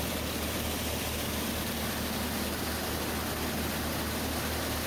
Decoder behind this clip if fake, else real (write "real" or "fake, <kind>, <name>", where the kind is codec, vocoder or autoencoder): real